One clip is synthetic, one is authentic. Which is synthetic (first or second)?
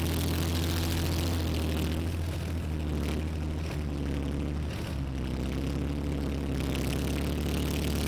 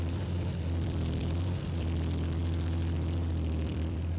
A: second